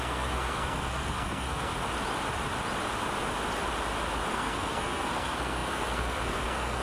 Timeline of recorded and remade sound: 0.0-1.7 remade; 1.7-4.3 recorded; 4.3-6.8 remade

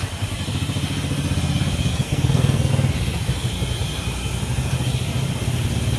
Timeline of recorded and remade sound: 0.0-1.9 recorded; 1.9-2.7 remade; 2.7-6.0 recorded

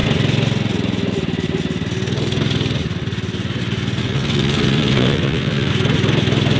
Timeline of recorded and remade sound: 0.0-4.0 recorded; 4.0-5.7 remade; 5.7-6.6 recorded

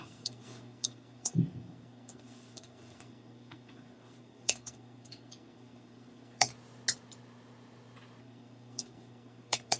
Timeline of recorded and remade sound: 0.0-6.5 remade; 6.5-8.2 recorded; 8.2-9.8 remade

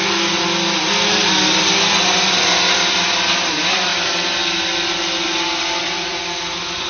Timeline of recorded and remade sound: 0.0-6.9 recorded

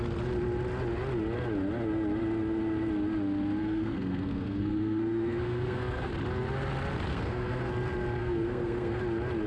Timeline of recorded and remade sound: 0.0-3.6 recorded; 3.6-6.1 remade; 6.1-7.1 recorded; 7.1-7.7 remade; 7.7-8.2 recorded; 8.2-9.0 remade; 9.0-9.5 recorded

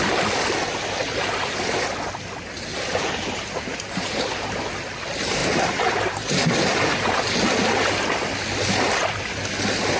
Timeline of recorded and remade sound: 0.0-2.7 recorded; 2.7-4.4 remade; 4.4-5.4 recorded; 5.4-7.3 remade; 7.3-10.0 recorded

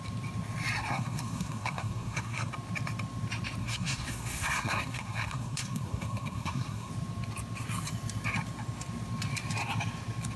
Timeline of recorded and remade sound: 0.0-0.9 recorded; 0.9-2.5 remade; 2.5-3.6 recorded; 3.6-6.9 remade; 6.9-10.4 recorded